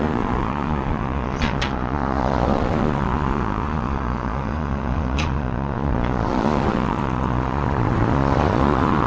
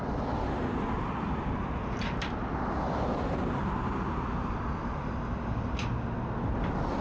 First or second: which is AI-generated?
first